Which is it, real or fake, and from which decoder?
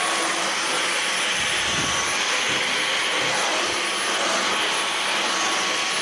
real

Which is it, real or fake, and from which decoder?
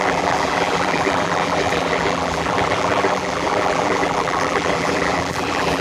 fake, vocoder, BigVGAN v2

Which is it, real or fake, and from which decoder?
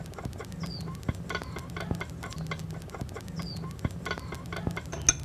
real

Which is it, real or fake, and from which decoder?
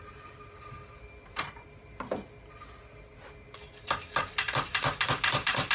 real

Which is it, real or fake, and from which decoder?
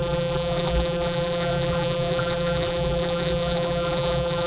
fake, vocoder, BigVGAN v2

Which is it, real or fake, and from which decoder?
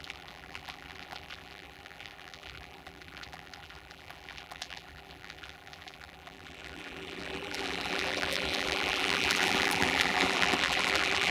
fake, vocoder, BigVGAN v2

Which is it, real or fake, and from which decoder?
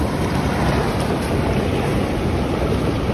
fake, vocoder, BigVGAN v2